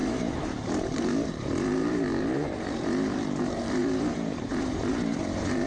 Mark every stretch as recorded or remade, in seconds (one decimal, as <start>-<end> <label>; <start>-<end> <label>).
0.0-5.7 remade